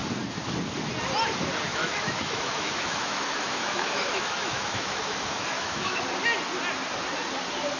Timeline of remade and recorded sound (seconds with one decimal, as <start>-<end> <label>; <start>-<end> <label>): 0.0-1.7 recorded; 1.7-6.0 remade; 6.0-7.8 recorded